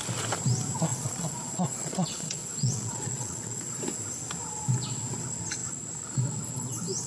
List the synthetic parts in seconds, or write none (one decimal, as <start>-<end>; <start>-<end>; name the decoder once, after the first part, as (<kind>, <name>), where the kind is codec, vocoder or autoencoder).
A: 0.9-3.8 (vocoder, Vocos)